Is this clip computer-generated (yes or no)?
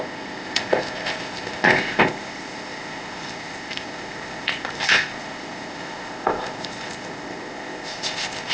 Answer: yes